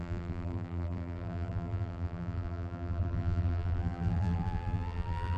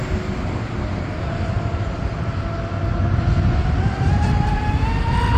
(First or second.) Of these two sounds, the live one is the second